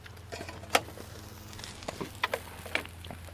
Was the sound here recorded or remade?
recorded